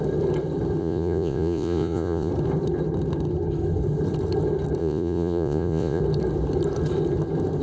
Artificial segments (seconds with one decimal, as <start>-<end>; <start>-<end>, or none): 0.8-2.3; 4.8-6.0